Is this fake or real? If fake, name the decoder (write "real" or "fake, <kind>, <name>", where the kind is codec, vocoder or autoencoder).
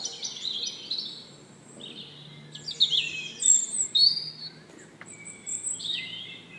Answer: real